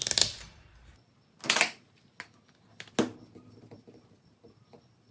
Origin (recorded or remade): recorded